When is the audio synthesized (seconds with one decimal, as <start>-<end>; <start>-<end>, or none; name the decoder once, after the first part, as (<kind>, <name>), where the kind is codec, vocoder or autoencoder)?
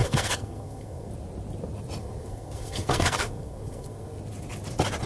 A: 0.0-1.1 (codec, SNAC); 2.0-4.2